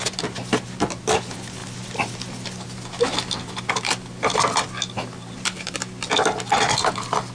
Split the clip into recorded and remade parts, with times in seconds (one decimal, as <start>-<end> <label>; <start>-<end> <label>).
0.0-7.3 recorded